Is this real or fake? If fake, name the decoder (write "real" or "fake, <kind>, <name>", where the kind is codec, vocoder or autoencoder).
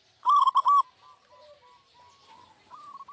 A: real